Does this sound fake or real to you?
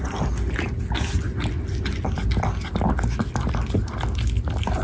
real